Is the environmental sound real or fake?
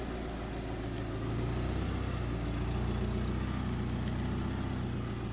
real